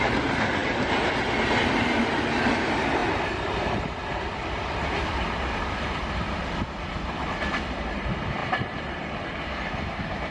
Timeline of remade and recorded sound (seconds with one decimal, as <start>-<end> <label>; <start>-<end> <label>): 0.0-10.3 recorded